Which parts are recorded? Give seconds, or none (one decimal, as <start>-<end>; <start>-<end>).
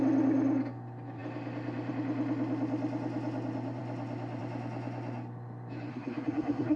0.0-5.9